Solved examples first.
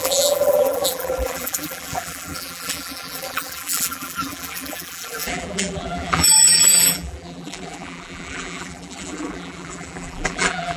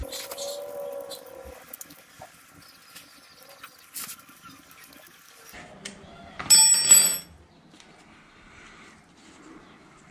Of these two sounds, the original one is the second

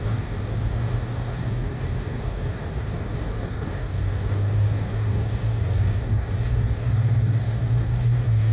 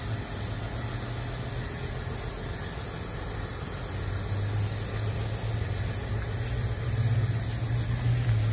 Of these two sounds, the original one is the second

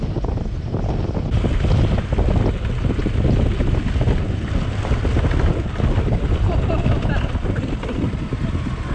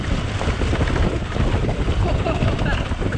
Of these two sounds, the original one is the first